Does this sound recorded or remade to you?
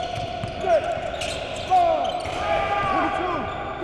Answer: recorded